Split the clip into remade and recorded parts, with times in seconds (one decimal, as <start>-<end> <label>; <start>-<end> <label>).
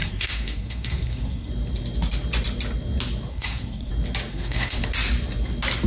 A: 0.0-1.5 remade; 1.5-3.3 recorded; 3.3-3.9 remade; 3.9-4.3 recorded; 4.3-4.8 remade; 4.8-5.9 recorded